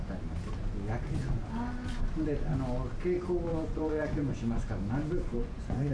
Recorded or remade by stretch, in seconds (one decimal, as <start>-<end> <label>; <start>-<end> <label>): 0.0-3.5 recorded; 3.5-4.7 remade; 4.7-5.3 recorded; 5.3-5.9 remade